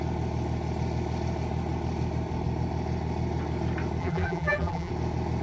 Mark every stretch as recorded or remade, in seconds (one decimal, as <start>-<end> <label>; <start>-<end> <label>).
0.0-4.0 recorded; 4.0-4.9 remade; 4.9-5.4 recorded